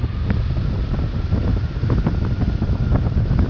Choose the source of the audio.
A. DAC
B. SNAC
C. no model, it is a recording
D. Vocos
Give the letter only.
C